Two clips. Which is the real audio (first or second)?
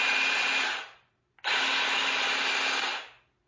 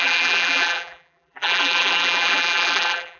first